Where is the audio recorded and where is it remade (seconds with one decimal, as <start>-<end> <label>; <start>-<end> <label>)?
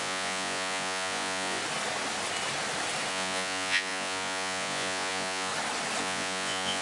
0.0-1.6 remade; 1.6-3.1 recorded; 3.1-5.5 remade; 5.5-6.0 recorded; 6.0-6.8 remade